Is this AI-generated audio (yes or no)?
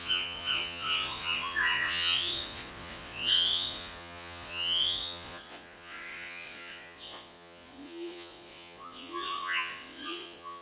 yes